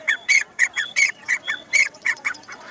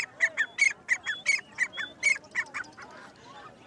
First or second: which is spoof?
first